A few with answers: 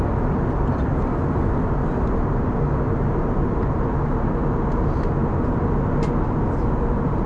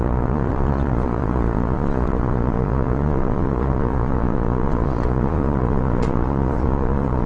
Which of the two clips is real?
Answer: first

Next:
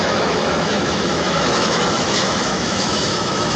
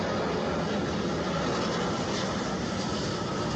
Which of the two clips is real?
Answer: second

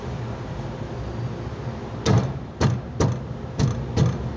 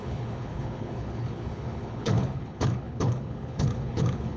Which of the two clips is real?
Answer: first